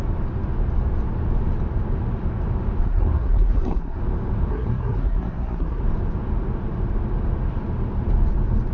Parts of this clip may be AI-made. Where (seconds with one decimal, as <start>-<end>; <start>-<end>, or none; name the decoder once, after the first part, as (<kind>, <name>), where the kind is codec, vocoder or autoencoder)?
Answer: 2.8-4.0 (codec, SNAC); 4.5-5.8